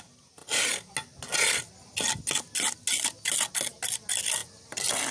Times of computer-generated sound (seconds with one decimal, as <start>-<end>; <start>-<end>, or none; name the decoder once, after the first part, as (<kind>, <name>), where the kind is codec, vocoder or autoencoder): none